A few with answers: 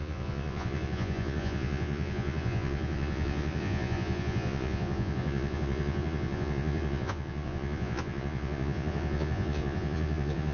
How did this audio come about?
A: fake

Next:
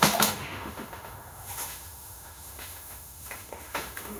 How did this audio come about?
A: fake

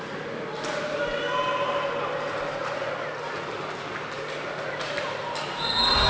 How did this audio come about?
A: real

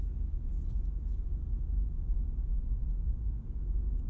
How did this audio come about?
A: real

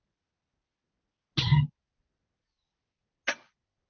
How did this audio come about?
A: real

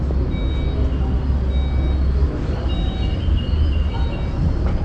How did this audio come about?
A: real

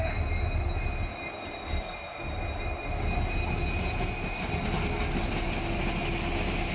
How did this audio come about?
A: real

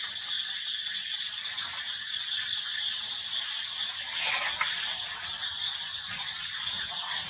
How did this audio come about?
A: real